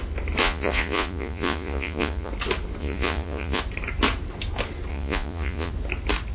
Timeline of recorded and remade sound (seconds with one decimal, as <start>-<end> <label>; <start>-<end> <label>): 0.0-0.4 recorded; 0.4-2.3 remade; 2.3-2.8 recorded; 2.8-3.6 remade; 3.6-4.9 recorded; 4.9-5.7 remade; 5.7-6.3 recorded